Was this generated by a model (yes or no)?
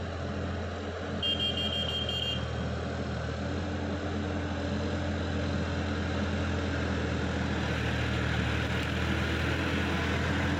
no